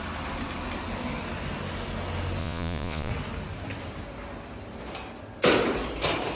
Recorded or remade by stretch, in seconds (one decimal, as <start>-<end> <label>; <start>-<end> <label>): 0.0-2.4 recorded; 2.4-3.1 remade; 3.1-6.3 recorded